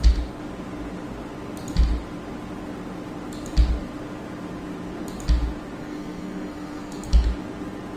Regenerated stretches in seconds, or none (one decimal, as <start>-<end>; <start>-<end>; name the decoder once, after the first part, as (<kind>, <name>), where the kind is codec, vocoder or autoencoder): 5.8-7.1 (codec, SNAC)